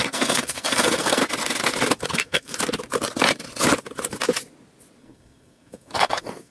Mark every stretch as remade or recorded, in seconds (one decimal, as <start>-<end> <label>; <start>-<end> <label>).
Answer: 0.0-1.2 remade; 1.2-2.1 recorded; 2.1-2.5 remade; 2.5-5.0 recorded; 5.0-6.5 remade